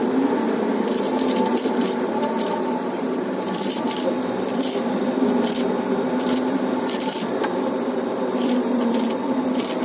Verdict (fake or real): fake